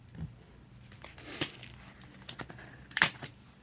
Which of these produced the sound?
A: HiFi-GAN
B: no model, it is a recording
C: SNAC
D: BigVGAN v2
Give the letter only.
D